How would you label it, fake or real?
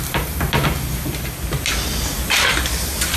real